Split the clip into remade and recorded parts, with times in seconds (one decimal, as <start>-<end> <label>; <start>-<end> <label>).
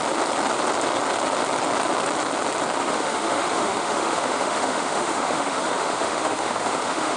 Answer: 0.0-2.8 recorded; 2.8-7.2 remade